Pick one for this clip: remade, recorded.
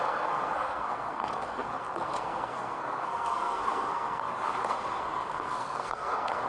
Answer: remade